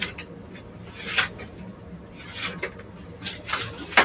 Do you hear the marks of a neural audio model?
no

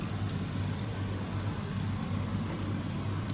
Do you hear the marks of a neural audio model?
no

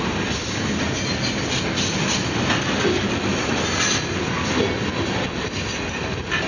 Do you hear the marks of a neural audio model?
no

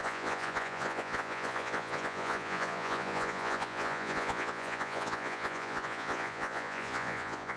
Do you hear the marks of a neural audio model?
yes